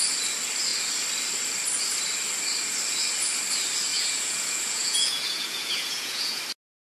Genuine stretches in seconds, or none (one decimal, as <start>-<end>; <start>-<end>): 0.0-3.9; 6.4-6.9